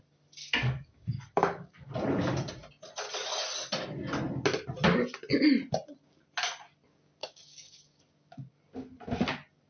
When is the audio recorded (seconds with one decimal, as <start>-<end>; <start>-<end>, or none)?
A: 0.0-0.4; 1.9-7.2; 8.0-9.7